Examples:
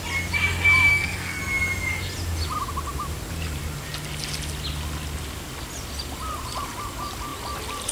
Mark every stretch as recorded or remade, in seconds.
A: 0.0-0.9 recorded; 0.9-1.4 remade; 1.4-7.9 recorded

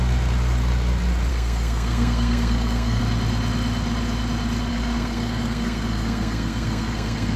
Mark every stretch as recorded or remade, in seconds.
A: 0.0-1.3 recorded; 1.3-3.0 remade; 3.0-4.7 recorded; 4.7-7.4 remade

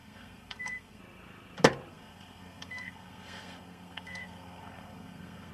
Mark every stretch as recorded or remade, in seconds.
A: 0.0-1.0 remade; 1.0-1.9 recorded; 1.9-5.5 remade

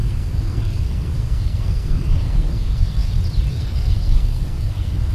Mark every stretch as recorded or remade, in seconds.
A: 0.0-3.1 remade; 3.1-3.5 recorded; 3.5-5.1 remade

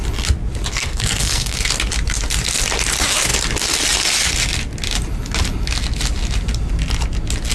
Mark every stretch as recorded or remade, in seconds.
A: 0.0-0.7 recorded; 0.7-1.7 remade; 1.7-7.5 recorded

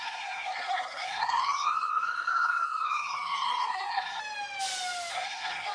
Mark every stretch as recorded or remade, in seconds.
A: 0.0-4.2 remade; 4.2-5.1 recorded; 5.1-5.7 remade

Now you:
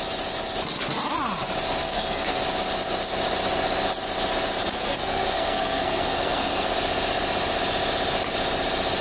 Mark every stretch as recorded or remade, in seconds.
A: 0.0-1.8 recorded; 1.8-2.4 remade; 2.4-4.6 recorded; 4.6-6.7 remade; 6.7-9.0 recorded

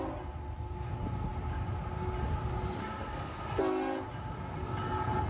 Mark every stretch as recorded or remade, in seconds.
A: 0.0-2.8 recorded; 2.8-3.6 remade; 3.6-5.3 recorded